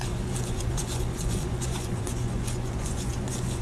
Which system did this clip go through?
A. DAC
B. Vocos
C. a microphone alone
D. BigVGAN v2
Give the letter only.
B